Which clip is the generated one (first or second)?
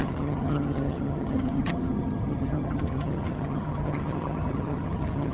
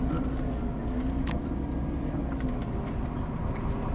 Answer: first